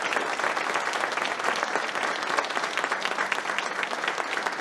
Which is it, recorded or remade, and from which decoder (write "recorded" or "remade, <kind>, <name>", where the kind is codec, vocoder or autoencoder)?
recorded